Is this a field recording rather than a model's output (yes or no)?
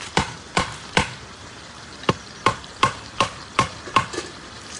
no